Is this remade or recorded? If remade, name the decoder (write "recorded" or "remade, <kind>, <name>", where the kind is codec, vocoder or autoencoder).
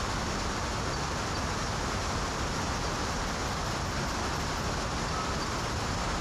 recorded